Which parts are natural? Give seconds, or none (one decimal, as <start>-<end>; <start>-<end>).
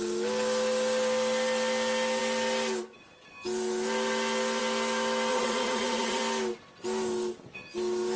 0.0-5.3; 6.2-8.2